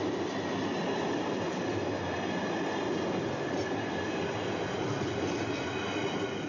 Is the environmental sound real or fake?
real